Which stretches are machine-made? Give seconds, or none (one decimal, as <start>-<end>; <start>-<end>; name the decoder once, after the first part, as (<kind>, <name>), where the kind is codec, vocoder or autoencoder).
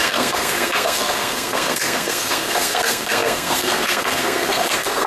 0.0-5.1 (codec, SNAC)